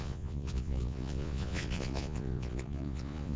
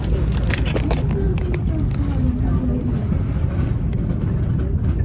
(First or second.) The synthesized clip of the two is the first